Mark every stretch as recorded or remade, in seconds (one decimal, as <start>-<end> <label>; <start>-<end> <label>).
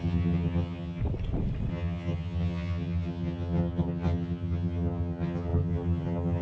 0.0-1.0 remade; 1.0-1.7 recorded; 1.7-6.4 remade